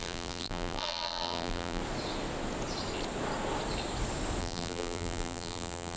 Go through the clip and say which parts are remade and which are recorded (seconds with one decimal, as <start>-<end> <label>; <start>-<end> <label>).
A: 0.0-1.8 remade; 1.8-4.4 recorded; 4.4-6.0 remade